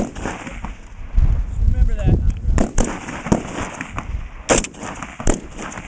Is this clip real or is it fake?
real